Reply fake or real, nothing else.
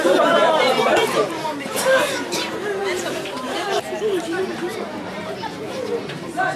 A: fake